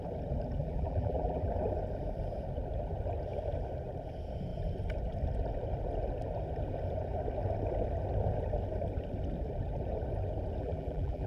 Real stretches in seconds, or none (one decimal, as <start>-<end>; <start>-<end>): 0.0-0.6; 1.5-10.6